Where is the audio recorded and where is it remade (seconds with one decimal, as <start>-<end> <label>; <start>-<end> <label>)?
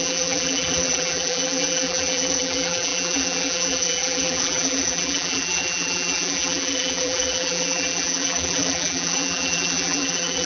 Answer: 0.0-10.4 remade